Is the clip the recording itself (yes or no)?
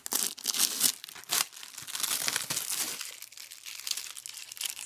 yes